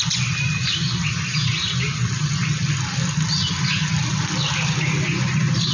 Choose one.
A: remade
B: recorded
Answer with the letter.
B